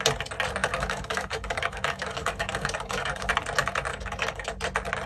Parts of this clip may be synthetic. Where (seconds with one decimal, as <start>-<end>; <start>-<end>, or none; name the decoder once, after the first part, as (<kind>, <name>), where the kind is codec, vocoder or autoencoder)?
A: 0.6-3.3 (codec, DAC); 3.9-4.5